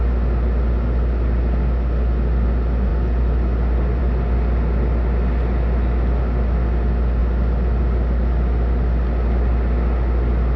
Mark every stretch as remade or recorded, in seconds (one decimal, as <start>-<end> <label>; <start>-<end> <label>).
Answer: 0.0-10.6 recorded